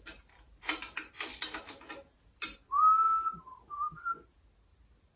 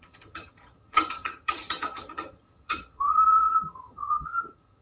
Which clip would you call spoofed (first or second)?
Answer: second